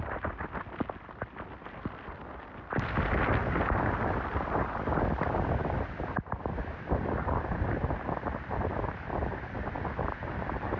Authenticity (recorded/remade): recorded